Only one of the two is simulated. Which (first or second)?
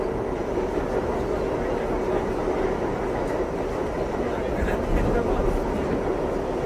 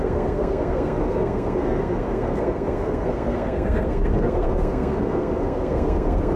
second